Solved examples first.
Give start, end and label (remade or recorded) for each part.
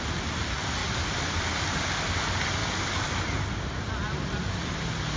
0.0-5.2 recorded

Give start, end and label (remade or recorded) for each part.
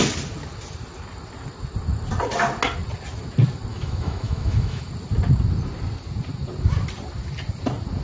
0.0-3.7 recorded; 3.7-4.9 remade; 4.9-8.0 recorded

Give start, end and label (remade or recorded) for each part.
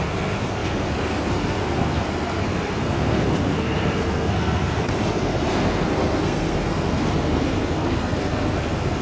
0.0-9.0 remade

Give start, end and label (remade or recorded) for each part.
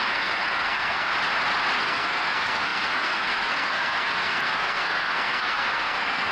0.0-1.1 remade; 1.1-1.8 recorded; 1.8-6.3 remade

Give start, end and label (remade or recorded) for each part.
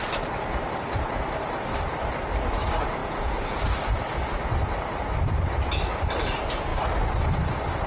0.0-3.0 recorded; 3.0-3.6 remade; 3.6-7.9 recorded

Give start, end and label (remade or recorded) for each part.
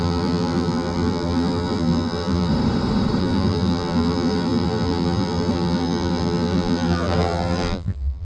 0.0-2.5 remade; 2.5-3.2 recorded; 3.2-8.2 remade